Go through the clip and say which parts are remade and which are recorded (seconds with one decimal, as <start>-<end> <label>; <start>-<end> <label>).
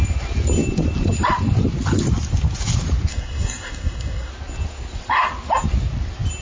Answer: 0.0-3.1 recorded; 3.1-4.3 remade; 4.3-6.4 recorded